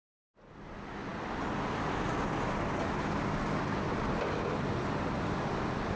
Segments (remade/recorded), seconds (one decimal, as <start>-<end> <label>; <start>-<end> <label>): 0.0-6.0 recorded